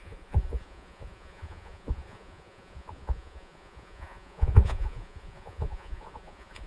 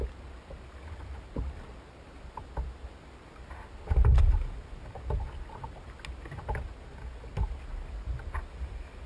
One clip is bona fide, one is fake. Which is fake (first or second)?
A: first